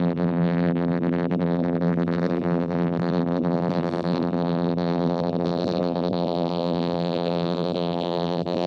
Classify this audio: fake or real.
fake